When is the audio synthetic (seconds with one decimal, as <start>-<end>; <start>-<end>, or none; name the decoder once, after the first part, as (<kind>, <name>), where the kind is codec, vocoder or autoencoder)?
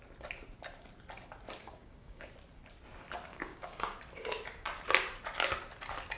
1.6-2.3 (codec, DAC); 3.3-4.0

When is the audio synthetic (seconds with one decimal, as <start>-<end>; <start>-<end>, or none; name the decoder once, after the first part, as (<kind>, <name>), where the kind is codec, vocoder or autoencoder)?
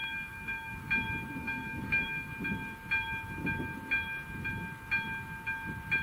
0.0-0.9 (codec, DAC); 1.4-2.3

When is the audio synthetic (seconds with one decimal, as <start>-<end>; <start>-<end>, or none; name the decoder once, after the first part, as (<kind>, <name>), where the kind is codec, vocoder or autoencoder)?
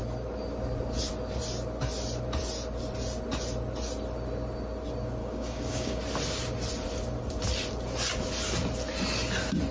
5.2-6.0 (codec, DAC)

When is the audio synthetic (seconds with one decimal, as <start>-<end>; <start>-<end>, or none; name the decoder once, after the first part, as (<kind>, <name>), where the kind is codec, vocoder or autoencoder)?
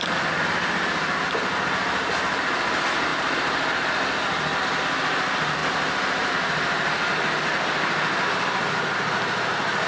none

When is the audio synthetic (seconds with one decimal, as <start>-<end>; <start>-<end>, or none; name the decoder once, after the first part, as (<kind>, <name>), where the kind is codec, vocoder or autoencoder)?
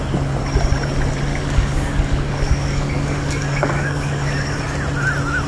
1.3-4.6 (codec, DAC)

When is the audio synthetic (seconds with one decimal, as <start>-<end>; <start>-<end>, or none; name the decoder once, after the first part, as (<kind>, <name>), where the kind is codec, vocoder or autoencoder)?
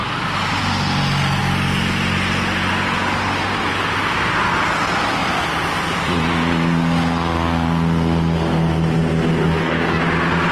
9.4-10.0 (codec, DAC)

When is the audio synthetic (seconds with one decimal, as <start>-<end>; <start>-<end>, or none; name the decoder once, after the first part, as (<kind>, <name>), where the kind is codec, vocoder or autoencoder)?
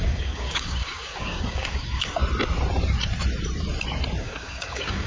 0.0-2.2 (codec, DAC); 4.2-5.1